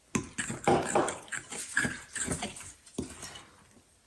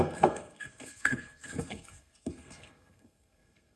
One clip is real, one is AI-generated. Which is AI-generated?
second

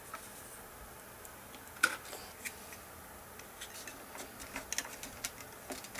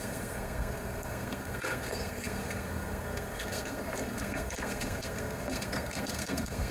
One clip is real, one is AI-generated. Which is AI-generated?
second